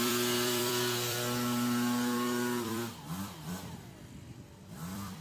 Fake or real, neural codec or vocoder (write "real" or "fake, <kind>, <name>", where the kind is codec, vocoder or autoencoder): fake, vocoder, BigVGAN v2